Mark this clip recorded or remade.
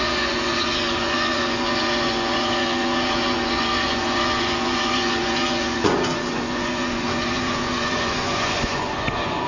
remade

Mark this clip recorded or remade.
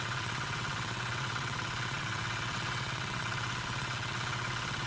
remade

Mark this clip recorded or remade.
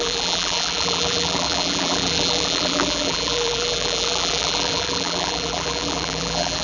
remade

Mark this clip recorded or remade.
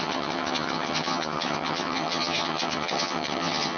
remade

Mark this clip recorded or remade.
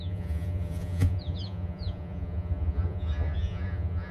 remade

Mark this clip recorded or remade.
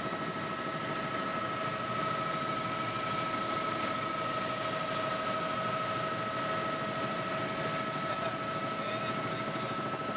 recorded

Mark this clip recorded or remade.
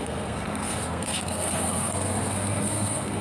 remade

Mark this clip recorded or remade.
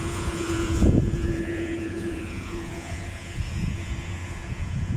remade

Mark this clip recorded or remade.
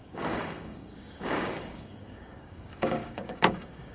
remade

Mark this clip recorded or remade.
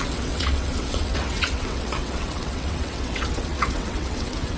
remade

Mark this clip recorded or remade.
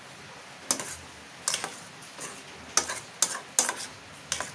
recorded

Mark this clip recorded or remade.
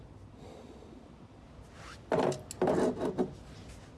recorded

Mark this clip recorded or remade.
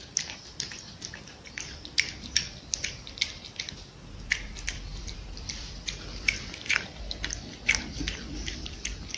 remade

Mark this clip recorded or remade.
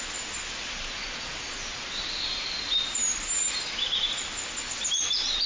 recorded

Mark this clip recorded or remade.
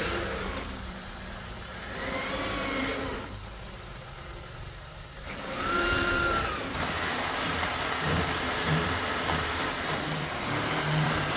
remade